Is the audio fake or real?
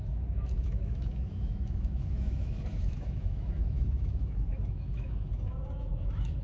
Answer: fake